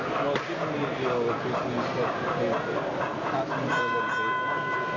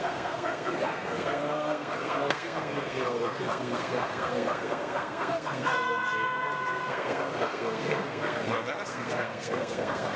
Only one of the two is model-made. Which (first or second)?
second